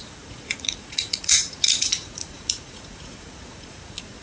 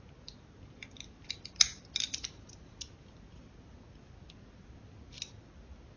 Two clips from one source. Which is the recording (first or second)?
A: second